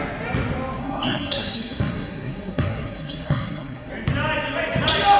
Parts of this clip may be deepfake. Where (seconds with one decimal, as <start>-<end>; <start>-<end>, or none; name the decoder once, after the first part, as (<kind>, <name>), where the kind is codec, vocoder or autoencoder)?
0.8-3.9 (codec, SNAC)